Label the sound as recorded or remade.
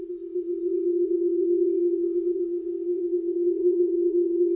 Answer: remade